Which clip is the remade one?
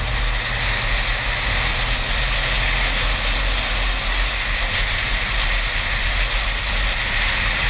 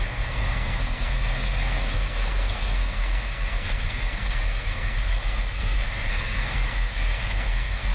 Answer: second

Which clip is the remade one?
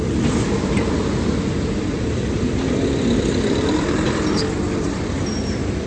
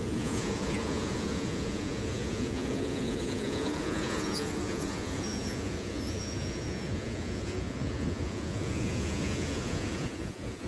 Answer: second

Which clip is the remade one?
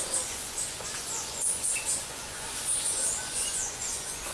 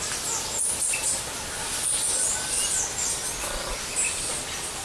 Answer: first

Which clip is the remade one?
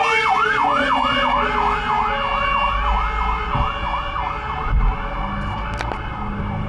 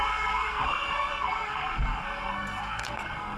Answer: second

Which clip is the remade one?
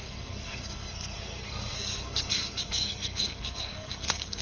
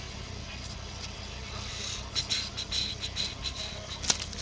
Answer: first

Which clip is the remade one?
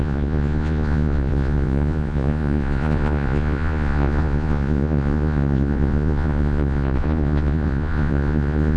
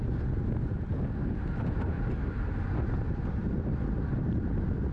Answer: first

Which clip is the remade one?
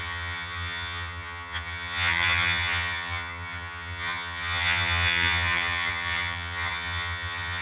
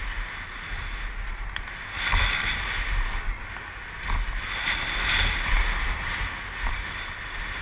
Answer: first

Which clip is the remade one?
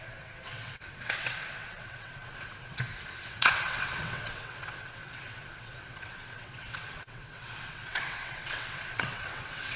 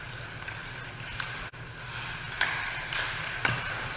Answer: first